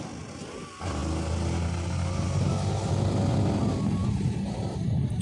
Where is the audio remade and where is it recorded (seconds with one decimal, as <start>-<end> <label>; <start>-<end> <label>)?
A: 0.0-4.0 recorded; 4.0-5.2 remade